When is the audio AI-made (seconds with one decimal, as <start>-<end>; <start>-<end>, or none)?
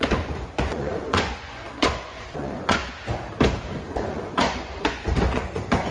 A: 0.0-2.8; 3.9-5.9